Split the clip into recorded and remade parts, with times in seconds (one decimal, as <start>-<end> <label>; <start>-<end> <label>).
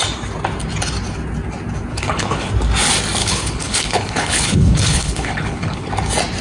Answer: 0.0-1.9 recorded; 1.9-2.5 remade; 2.5-3.2 recorded; 3.2-5.9 remade; 5.9-6.4 recorded